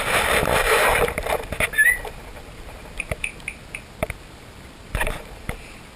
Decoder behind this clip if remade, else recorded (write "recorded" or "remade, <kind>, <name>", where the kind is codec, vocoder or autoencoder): remade, vocoder, BigVGAN v2